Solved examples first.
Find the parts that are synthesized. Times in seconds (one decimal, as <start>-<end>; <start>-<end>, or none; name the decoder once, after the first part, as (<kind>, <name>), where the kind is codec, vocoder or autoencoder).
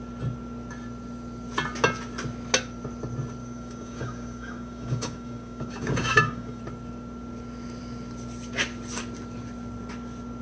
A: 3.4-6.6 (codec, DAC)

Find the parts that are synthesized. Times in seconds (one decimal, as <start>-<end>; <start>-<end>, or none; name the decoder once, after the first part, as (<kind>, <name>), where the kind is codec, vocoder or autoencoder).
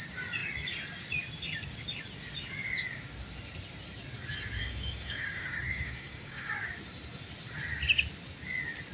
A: 4.6-6.5 (codec, DAC)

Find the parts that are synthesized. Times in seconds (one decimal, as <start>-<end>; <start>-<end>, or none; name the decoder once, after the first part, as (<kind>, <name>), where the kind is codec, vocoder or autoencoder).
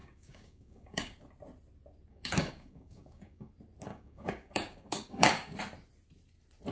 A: 0.0-1.2 (codec, DAC); 2.1-3.5; 3.9-5.6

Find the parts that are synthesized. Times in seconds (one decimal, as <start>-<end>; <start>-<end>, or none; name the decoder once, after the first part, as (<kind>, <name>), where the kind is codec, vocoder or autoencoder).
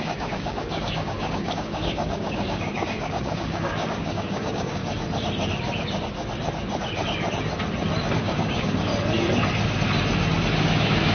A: 0.0-4.8 (codec, DAC); 8.2-8.9; 10.6-11.1